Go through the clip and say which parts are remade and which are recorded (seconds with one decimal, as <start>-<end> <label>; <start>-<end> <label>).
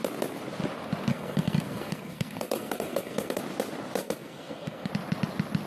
0.0-1.1 recorded; 1.1-3.4 remade; 3.4-4.0 recorded; 4.0-4.9 remade; 4.9-5.7 recorded